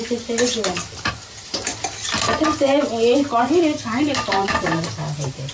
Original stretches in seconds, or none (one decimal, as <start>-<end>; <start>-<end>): 1.7-4.0